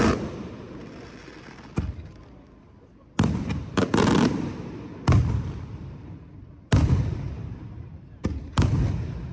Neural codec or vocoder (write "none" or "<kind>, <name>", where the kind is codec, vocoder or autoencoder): vocoder, BigVGAN v2